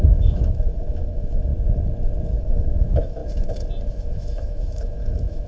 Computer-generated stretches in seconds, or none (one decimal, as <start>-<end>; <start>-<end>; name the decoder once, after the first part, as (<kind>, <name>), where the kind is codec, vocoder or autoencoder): 0.0-1.5 (autoencoder, DAC-VAE); 2.4-3.2; 3.9-5.5